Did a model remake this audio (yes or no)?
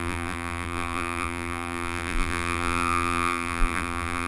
yes